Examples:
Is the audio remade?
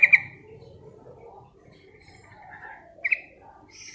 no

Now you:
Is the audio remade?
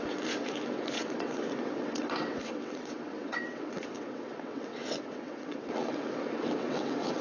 yes